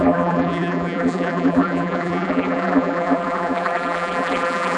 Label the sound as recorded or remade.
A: remade